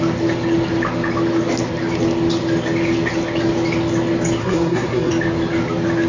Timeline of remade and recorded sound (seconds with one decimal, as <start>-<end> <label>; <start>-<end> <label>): 0.0-4.4 recorded; 4.4-5.1 remade; 5.1-6.1 recorded